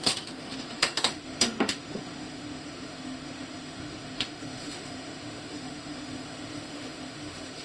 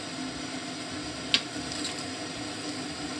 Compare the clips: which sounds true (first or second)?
second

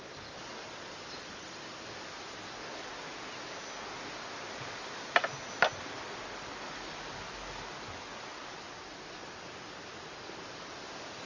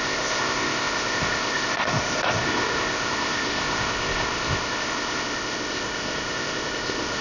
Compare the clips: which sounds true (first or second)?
first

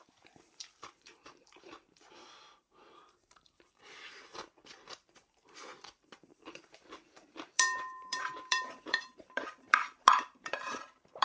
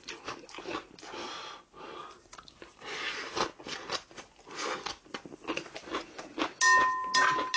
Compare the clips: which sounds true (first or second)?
second